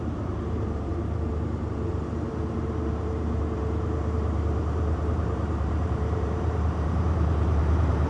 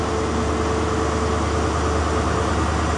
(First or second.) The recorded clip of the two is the second